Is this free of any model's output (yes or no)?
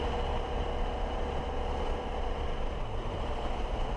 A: yes